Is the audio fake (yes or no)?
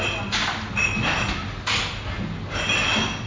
no